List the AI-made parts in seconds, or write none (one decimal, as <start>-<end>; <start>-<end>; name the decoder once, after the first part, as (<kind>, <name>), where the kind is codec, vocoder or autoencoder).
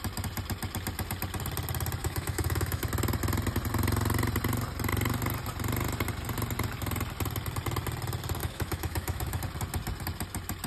2.0-2.9 (autoencoder, DAC-VAE); 8.4-9.4